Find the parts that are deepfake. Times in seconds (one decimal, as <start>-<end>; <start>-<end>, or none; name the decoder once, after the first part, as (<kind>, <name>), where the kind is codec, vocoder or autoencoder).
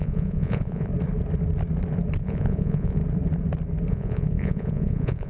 0.0-0.9 (vocoder, Vocos); 2.2-3.0; 3.9-5.3